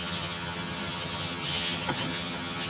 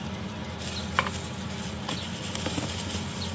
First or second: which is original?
second